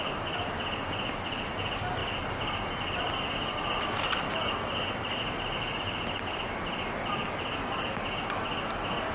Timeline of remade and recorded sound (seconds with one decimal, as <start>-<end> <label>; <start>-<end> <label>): 0.0-9.1 recorded